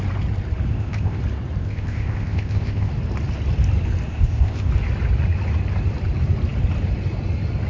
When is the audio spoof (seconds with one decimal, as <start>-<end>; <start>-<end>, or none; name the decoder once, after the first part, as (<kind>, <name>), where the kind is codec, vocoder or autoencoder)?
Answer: 0.7-1.2 (codec, ZipCodec); 1.6-2.9; 4.1-4.7